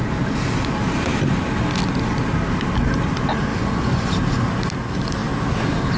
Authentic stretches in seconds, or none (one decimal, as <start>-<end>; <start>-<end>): 0.0-3.5; 4.1-6.0